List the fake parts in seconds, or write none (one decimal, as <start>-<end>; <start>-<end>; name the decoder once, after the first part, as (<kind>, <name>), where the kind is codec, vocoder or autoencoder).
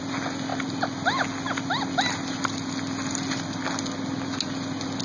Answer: none